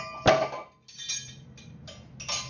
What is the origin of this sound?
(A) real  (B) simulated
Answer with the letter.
A